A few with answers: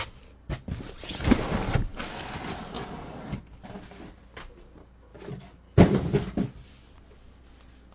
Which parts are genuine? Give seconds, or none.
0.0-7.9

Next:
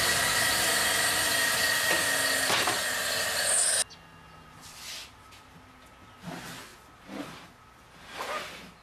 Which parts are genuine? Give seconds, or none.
0.0-8.8